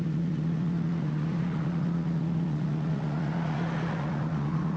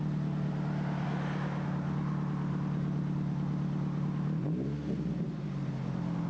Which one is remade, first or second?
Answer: first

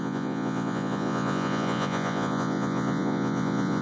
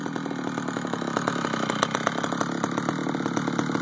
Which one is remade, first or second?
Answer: first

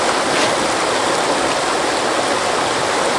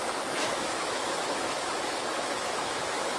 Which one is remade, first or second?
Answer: second